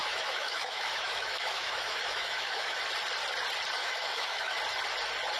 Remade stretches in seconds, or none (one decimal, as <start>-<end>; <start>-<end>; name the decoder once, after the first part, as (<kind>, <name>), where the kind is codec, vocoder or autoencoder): 0.0-2.8 (autoencoder, DAC-VAE); 3.8-4.6

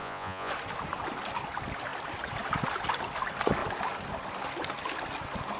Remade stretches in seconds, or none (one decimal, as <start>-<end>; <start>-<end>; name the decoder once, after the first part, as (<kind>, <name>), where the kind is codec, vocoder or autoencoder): 0.0-0.5 (vocoder, Vocos)

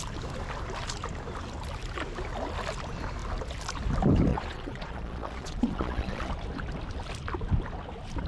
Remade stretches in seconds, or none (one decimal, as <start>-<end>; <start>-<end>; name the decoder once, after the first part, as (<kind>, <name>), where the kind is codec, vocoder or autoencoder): 4.3-6.3 (vocoder, Vocos)

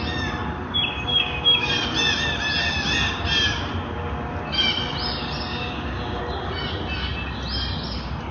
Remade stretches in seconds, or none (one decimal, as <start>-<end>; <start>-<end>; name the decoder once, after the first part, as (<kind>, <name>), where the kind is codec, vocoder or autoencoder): 1.1-1.7 (codec, DAC); 5.5-6.2